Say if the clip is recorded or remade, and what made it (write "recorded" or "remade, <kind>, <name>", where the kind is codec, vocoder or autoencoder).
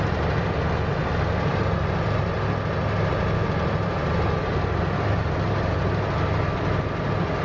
recorded